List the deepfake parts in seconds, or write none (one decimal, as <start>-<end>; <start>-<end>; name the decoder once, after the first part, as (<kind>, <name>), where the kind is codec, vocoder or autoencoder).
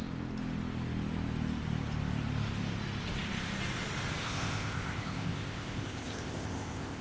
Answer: 4.2-7.0 (codec, ZipCodec)